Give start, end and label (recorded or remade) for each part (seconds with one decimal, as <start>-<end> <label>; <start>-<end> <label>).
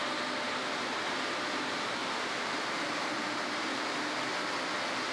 0.0-2.0 recorded; 2.0-4.1 remade; 4.1-5.1 recorded